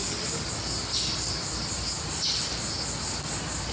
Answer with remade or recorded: recorded